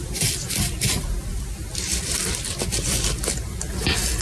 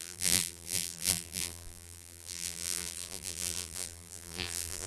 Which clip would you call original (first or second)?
first